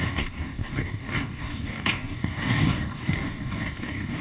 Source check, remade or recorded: remade